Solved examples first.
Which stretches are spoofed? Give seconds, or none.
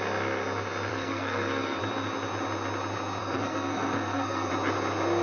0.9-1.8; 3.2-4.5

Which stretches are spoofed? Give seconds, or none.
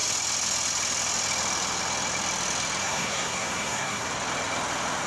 2.8-4.1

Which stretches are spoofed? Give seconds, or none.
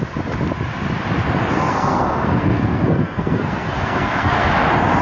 1.5-4.5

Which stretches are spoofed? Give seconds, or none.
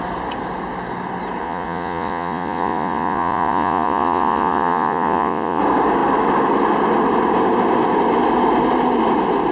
1.4-5.6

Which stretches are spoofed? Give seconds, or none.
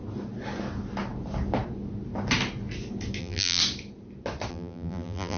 3.2-3.6; 4.5-5.4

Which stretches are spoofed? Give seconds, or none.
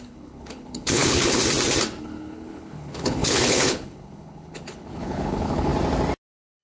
0.0-1.4; 2.0-5.7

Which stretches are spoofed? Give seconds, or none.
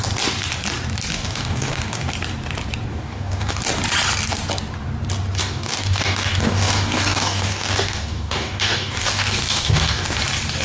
1.1-2.1; 2.9-3.6; 5.4-10.2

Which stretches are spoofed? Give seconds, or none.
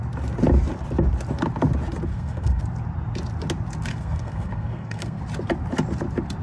2.1-2.6; 3.9-5.2